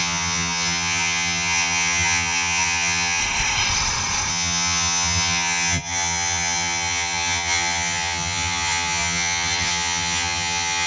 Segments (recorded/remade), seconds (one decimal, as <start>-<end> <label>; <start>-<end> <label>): 0.0-3.2 remade; 3.2-4.3 recorded; 4.3-10.9 remade